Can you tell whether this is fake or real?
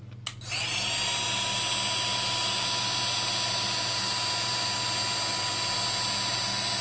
real